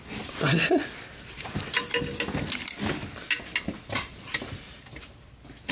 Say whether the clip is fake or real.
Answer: real